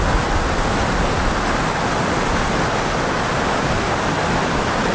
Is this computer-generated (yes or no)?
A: no